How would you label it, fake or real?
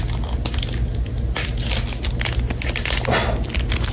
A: real